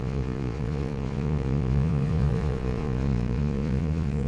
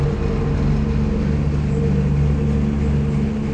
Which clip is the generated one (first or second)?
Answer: first